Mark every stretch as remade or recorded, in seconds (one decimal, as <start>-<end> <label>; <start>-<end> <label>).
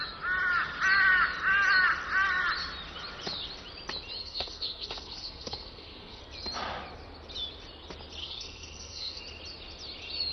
0.0-4.2 recorded; 4.2-6.2 remade; 6.2-8.2 recorded; 8.2-9.2 remade; 9.2-10.3 recorded